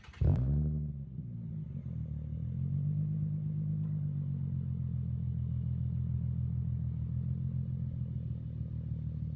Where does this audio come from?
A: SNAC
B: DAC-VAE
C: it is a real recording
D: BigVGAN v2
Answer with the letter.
C